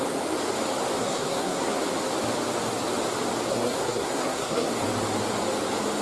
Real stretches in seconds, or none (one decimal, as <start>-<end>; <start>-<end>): 0.0-1.0; 1.8-3.5; 4.7-6.0